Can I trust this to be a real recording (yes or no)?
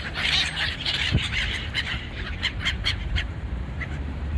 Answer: no